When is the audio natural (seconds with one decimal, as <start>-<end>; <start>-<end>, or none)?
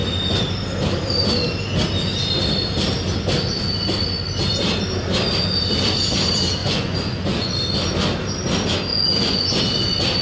0.0-6.6; 7.5-8.9; 9.6-10.2